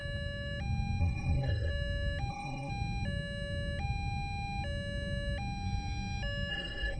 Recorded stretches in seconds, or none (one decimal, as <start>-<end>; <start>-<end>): 0.0-1.0; 1.7-2.3; 2.7-6.5